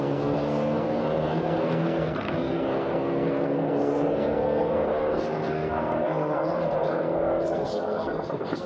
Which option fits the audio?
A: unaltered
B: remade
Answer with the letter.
B